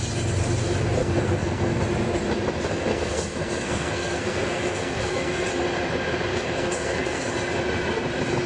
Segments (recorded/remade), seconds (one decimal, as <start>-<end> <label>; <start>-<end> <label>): 0.0-1.0 recorded; 1.0-1.8 remade; 1.8-2.9 recorded; 2.9-5.5 remade; 5.5-6.3 recorded; 6.3-7.3 remade; 7.3-8.5 recorded